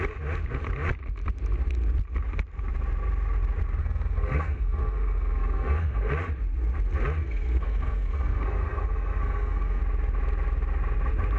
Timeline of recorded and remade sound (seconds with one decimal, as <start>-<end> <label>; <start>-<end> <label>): 0.0-3.8 recorded; 3.8-6.1 remade; 6.1-7.2 recorded; 7.2-9.8 remade; 9.8-11.4 recorded